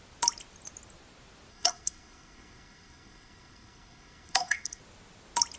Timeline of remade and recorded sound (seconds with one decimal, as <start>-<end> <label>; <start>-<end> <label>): 0.0-1.5 recorded; 1.5-4.8 remade; 4.8-5.6 recorded